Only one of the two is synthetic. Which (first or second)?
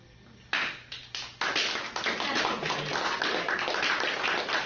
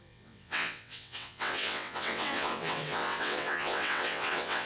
second